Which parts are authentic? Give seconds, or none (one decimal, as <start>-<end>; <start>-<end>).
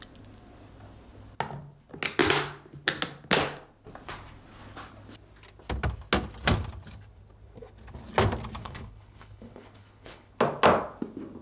0.0-8.6; 10.3-11.4